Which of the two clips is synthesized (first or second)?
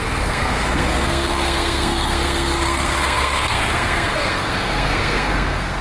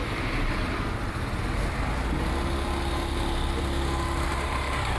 first